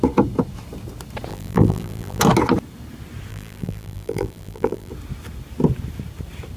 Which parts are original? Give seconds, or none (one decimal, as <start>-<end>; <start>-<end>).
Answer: 0.0-1.3; 2.2-3.3; 4.9-6.6